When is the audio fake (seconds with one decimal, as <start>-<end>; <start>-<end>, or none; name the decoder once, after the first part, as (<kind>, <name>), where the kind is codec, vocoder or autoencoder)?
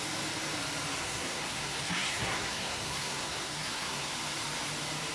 1.0-4.1 (codec, SNAC)